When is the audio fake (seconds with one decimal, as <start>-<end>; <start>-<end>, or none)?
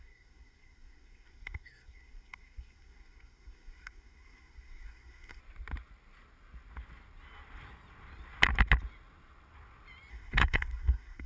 0.0-5.4; 10.1-11.3